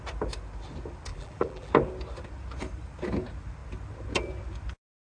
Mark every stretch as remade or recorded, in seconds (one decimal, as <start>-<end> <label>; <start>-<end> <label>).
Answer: 0.0-1.1 recorded; 1.1-1.7 remade; 1.7-5.1 recorded